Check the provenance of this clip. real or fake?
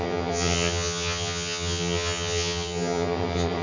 fake